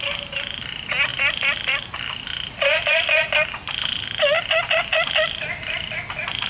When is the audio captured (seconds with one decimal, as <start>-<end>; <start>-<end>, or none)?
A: 0.0-6.5